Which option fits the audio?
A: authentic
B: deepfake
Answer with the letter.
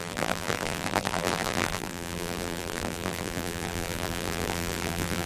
B